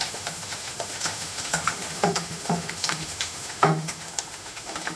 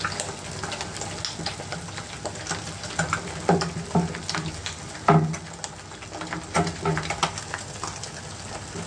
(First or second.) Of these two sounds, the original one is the second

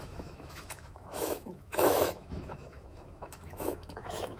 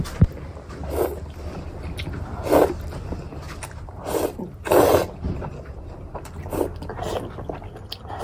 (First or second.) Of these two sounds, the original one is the second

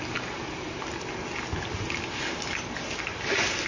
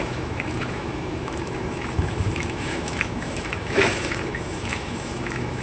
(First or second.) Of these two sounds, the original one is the first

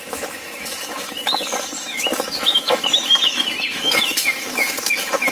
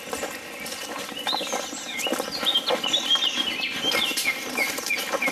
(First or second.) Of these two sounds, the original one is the second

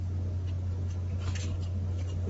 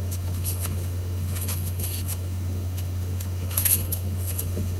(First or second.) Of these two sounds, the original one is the first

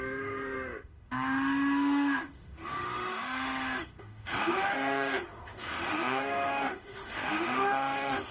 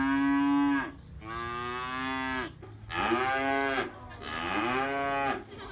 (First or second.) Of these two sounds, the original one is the second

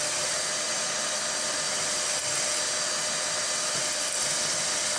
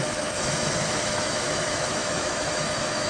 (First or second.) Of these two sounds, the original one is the first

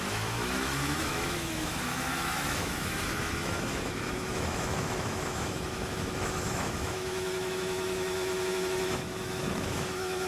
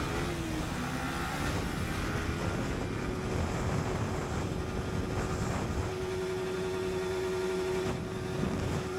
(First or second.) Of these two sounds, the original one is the second